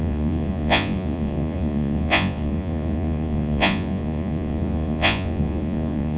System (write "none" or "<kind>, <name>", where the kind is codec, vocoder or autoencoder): vocoder, Vocos